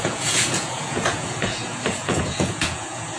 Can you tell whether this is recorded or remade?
remade